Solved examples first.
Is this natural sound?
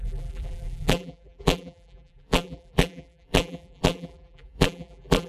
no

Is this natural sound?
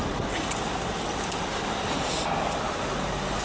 yes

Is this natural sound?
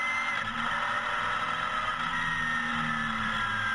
yes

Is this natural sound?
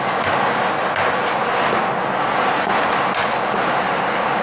yes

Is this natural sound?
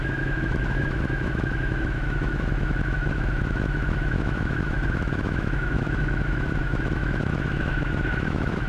no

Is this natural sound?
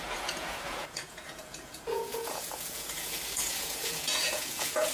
no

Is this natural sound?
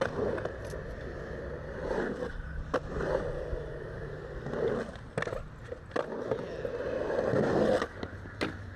yes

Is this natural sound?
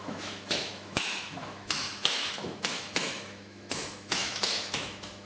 no